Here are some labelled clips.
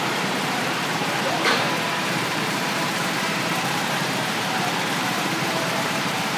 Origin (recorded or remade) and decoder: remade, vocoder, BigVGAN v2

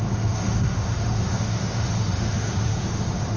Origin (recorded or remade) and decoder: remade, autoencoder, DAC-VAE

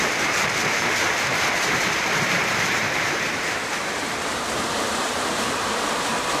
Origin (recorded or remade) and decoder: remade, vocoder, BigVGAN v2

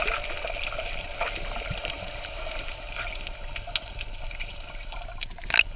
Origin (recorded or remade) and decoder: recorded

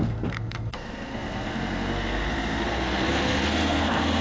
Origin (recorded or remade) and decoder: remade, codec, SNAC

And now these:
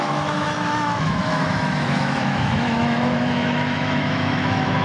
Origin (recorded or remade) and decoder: remade, autoencoder, DAC-VAE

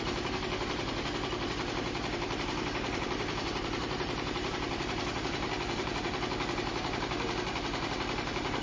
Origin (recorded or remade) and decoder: remade, vocoder, BigVGAN v2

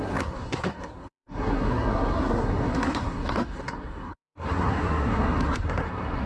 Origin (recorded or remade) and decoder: remade, codec, SNAC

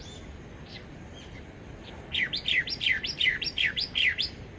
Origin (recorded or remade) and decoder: remade, vocoder, BigVGAN v2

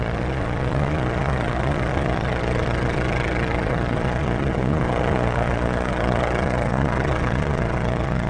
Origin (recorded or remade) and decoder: remade, vocoder, Vocos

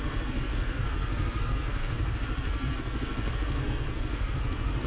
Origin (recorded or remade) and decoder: remade, codec, SNAC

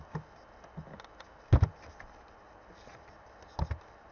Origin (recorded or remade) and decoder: recorded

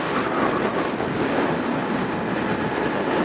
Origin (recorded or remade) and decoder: recorded